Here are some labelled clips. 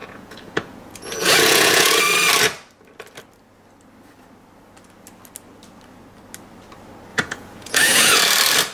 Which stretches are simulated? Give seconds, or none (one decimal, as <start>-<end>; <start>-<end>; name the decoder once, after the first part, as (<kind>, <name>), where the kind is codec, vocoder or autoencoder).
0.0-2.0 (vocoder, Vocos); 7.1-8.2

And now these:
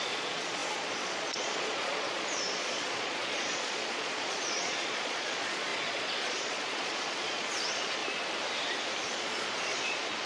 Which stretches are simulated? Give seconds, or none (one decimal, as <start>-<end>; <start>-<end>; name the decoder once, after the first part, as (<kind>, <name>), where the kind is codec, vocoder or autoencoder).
0.0-8.0 (vocoder, Vocos); 9.1-10.3

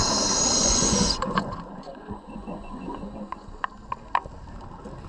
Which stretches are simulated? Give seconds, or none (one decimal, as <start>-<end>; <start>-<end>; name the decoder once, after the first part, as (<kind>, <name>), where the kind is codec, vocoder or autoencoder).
0.6-3.7 (vocoder, Vocos)